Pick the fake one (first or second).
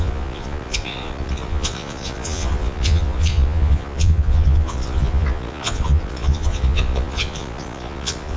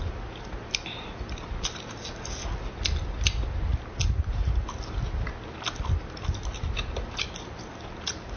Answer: first